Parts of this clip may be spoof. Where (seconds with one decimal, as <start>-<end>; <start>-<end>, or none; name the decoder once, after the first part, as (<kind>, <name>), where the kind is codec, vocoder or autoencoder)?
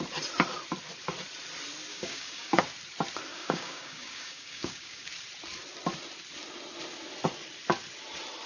1.9-2.6 (codec, DAC); 3.3-5.1